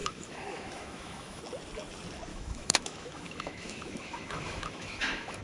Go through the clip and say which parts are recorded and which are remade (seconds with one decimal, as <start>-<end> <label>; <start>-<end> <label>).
0.0-1.4 remade; 1.4-2.3 recorded; 2.3-5.4 remade